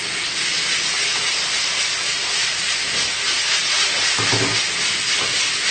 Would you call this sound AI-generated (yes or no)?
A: no